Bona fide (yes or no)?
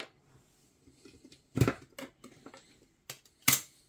yes